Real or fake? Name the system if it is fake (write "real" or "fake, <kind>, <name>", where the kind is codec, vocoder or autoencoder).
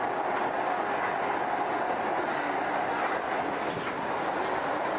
real